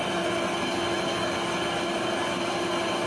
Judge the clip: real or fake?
real